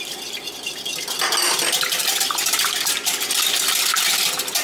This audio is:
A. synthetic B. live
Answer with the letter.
B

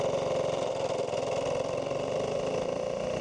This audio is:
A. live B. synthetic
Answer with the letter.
A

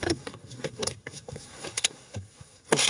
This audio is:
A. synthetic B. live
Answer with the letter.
A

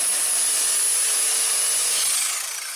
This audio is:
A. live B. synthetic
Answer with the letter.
A